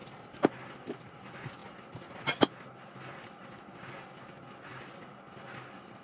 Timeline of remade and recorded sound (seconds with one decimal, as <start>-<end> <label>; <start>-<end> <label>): 0.0-6.0 recorded